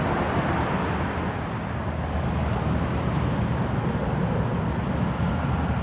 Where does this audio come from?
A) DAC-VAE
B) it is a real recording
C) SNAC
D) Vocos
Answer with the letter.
B